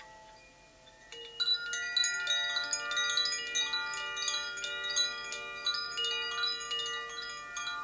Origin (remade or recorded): recorded